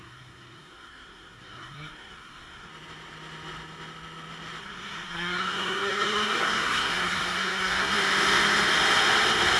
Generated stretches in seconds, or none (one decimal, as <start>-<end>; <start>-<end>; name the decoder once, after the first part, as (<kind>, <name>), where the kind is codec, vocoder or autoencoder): 0.0-2.7 (codec, SNAC); 4.6-8.0